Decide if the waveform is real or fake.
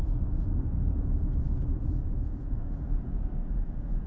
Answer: fake